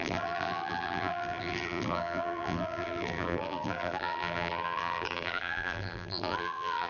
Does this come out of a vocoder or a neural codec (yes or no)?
yes